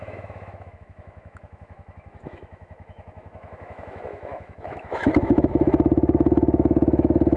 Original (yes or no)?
no